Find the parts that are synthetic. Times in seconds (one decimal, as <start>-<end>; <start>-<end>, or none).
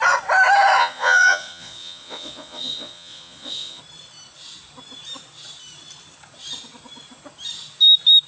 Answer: 0.8-3.8